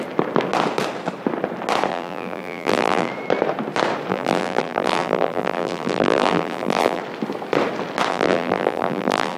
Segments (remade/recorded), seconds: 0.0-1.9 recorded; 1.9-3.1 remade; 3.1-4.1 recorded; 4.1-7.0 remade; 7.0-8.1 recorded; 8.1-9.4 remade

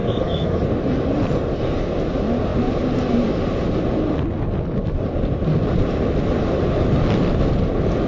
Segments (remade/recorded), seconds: 0.0-0.6 remade; 0.6-8.1 recorded

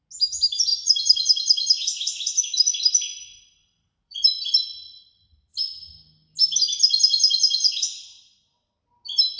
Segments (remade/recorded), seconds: 0.0-0.7 recorded; 0.7-2.8 remade; 2.8-3.6 recorded; 3.6-4.5 remade; 4.5-9.4 recorded

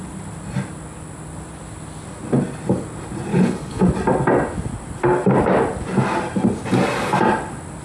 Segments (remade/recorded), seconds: 0.0-3.3 recorded; 3.3-3.8 remade; 3.8-7.8 recorded

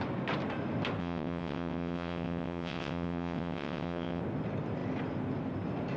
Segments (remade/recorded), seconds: 0.0-1.0 recorded; 1.0-4.2 remade; 4.2-6.0 recorded

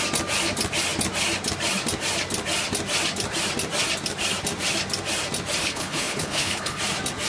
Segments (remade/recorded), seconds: 0.0-5.6 recorded; 5.6-6.8 remade; 6.8-7.3 recorded

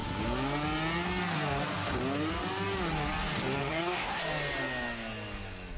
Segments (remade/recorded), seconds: 0.0-3.6 recorded; 3.6-4.2 remade; 4.2-5.8 recorded

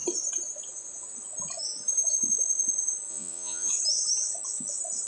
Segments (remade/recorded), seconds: 0.0-3.1 recorded; 3.1-3.7 remade; 3.7-5.1 recorded